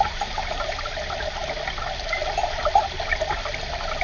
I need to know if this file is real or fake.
real